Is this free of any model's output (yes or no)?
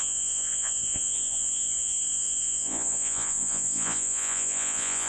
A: no